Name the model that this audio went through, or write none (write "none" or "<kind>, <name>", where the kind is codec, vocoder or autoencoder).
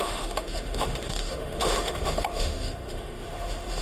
autoencoder, DAC-VAE